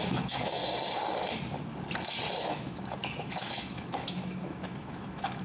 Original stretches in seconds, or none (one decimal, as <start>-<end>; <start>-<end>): 0.6-2.4